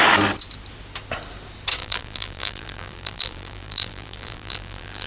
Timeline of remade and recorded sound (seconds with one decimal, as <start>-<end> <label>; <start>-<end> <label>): 0.0-1.8 recorded; 1.8-5.1 remade